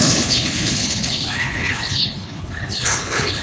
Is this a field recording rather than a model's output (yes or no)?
no